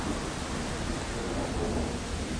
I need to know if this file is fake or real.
real